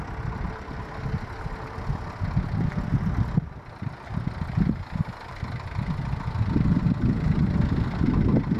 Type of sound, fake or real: real